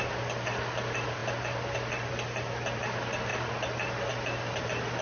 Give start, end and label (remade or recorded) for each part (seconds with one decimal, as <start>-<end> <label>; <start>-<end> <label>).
0.0-5.0 recorded